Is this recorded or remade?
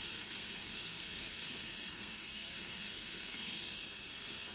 remade